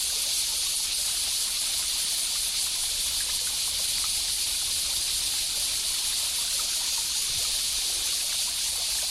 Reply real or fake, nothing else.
real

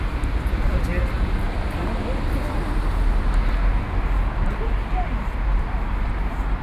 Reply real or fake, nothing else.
real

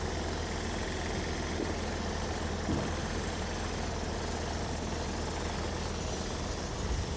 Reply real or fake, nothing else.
real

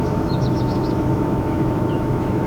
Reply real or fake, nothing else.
fake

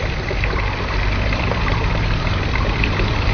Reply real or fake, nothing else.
fake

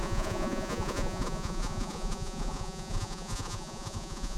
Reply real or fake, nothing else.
fake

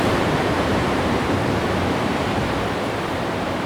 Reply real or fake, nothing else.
fake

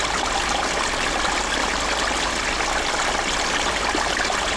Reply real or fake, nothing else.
real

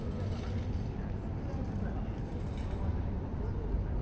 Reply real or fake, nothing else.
real